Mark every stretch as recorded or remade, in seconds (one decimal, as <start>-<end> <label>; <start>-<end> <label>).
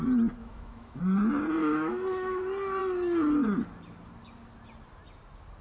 0.0-0.4 recorded; 0.4-1.0 remade; 1.0-1.6 recorded; 1.6-2.4 remade; 2.4-5.6 recorded